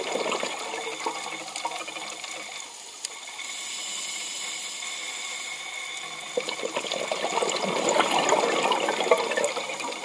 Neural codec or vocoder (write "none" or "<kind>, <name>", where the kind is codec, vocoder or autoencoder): none